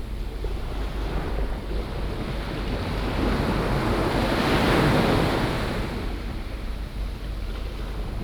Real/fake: real